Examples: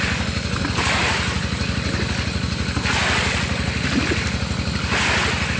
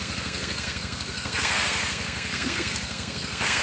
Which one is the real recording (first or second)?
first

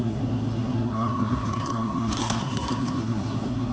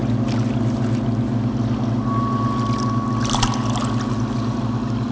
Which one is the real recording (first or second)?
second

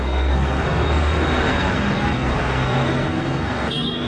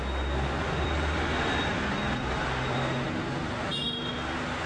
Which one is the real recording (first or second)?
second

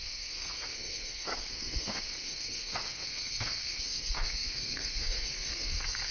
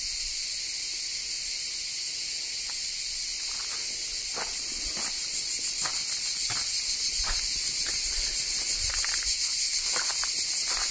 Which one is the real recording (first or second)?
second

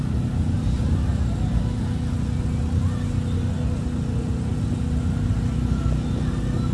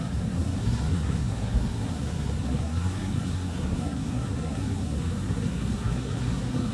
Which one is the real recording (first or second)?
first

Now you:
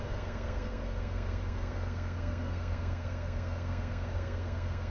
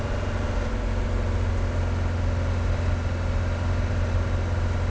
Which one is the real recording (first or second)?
second